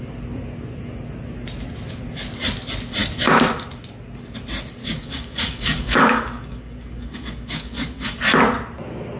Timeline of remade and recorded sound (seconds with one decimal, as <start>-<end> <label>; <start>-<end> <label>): 0.0-4.8 recorded; 4.8-8.2 remade; 8.2-9.2 recorded